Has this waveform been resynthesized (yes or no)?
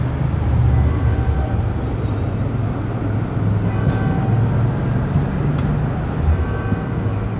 no